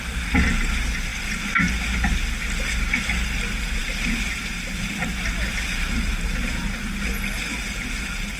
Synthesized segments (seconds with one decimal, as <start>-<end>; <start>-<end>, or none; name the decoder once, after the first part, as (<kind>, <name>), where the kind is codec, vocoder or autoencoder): none